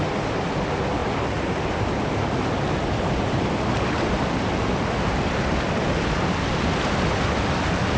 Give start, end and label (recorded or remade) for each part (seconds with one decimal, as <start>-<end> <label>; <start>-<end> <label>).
0.0-8.0 recorded